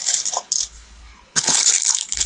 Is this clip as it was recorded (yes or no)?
no